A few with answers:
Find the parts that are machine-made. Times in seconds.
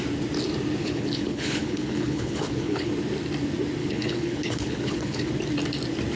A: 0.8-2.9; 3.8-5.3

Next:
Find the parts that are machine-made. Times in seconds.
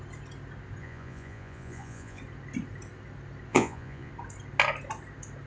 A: 0.8-2.2; 3.5-4.1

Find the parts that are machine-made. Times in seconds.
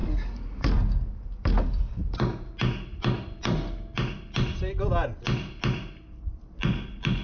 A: 0.6-2.0; 6.1-7.2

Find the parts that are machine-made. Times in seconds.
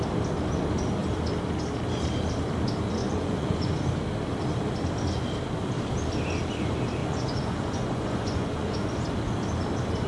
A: 3.0-3.7; 7.0-8.9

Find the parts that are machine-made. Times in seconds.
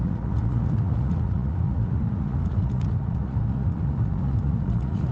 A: 0.0-5.1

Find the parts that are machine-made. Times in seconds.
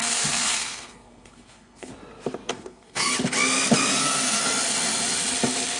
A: 0.0-1.9; 2.5-3.1; 4.0-4.4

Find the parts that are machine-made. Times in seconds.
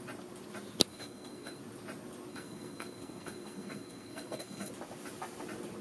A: 0.9-1.6; 2.3-4.7